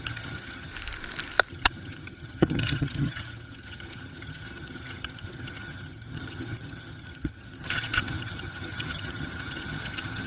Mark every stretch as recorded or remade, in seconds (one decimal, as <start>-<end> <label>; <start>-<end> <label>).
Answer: 0.0-0.7 remade; 0.7-1.5 recorded; 1.5-10.3 remade